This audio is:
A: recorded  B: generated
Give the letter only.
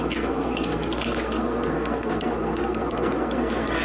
B